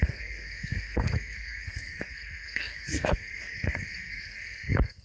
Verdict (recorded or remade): remade